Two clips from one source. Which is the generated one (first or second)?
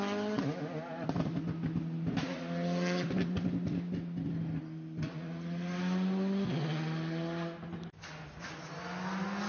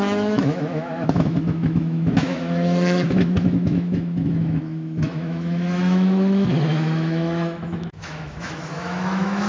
second